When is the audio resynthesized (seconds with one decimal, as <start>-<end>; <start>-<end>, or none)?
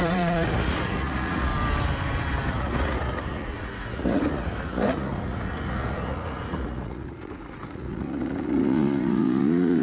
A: 0.0-1.5; 2.5-9.8